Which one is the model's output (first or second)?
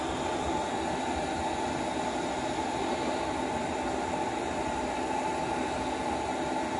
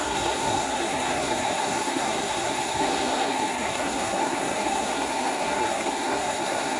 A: second